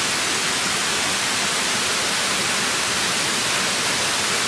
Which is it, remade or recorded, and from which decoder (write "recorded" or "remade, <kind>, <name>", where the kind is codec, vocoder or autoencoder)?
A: recorded